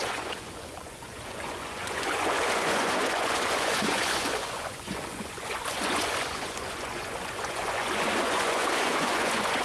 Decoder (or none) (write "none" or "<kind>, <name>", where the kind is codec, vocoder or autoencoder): vocoder, Vocos